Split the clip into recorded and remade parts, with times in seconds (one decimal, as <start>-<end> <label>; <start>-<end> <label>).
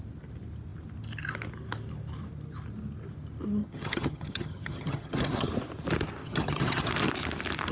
0.0-3.6 recorded; 3.6-5.5 remade; 5.5-6.2 recorded; 6.2-6.9 remade; 6.9-7.7 recorded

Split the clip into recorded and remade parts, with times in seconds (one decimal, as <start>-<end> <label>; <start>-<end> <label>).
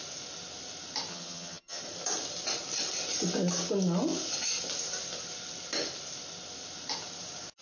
0.0-1.1 recorded; 1.1-1.8 remade; 1.8-7.6 recorded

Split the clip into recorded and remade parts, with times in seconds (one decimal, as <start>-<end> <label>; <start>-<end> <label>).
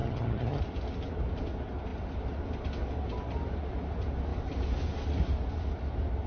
0.0-0.6 remade; 0.6-6.3 recorded